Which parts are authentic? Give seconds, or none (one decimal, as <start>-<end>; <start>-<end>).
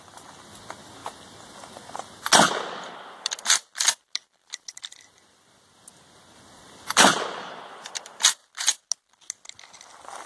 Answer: 0.0-10.3